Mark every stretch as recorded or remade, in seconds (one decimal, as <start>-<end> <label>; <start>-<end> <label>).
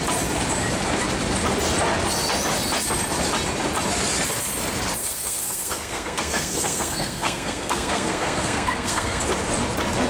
0.0-5.0 recorded; 5.0-9.2 remade; 9.2-10.1 recorded